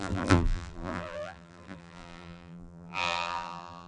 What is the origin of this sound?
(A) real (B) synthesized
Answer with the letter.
B